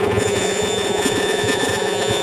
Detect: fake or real fake